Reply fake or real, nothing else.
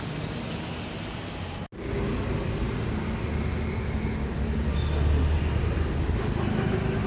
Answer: real